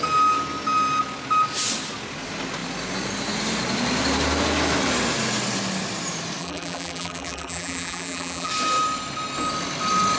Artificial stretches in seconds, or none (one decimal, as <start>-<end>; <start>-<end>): 6.4-8.5